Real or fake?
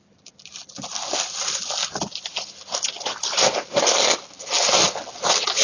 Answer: real